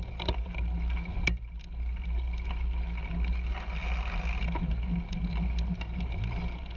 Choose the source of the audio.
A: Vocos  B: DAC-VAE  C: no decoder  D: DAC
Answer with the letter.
C